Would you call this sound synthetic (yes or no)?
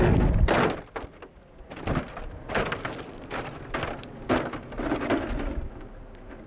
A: no